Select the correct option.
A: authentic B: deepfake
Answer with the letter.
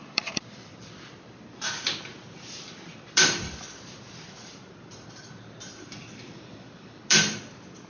B